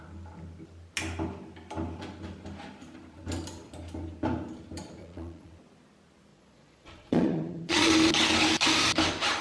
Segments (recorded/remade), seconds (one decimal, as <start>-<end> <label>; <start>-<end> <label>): 0.0-5.0 recorded; 5.0-5.5 remade; 5.5-6.3 recorded; 6.3-7.9 remade; 7.9-9.4 recorded